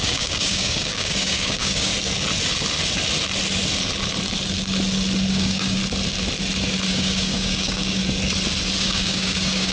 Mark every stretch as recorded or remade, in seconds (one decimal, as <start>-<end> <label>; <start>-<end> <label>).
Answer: 0.0-1.9 remade; 1.9-5.3 recorded; 5.3-5.8 remade; 5.8-6.9 recorded; 6.9-8.0 remade; 8.0-8.8 recorded; 8.8-9.7 remade